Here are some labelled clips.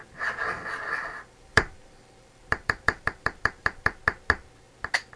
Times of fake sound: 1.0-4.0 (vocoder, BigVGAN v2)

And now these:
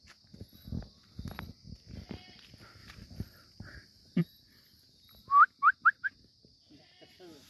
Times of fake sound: 2.8-4.2 (vocoder, BigVGAN v2)

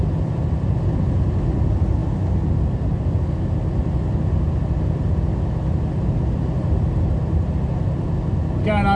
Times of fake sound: none

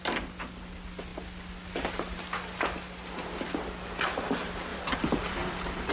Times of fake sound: 4.7-5.9 (vocoder, BigVGAN v2)

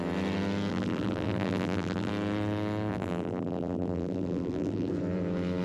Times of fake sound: 0.7-2.1 (vocoder, BigVGAN v2); 2.9-4.9

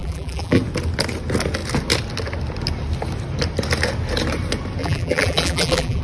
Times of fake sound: 0.0-0.6 (vocoder, BigVGAN v2); 4.8-6.0

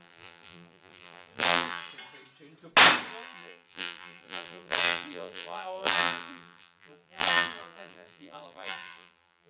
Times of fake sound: 0.0-1.9 (vocoder, BigVGAN v2); 3.1-9.5